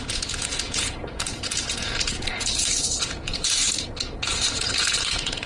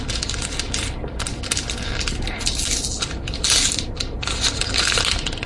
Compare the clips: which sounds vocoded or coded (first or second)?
first